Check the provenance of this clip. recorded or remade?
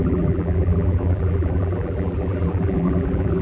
remade